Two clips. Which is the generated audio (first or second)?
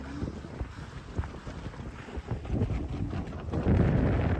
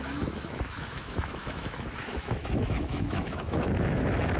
second